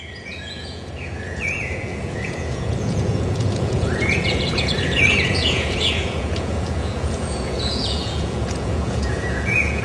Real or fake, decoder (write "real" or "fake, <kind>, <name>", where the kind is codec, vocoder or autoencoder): fake, vocoder, Vocos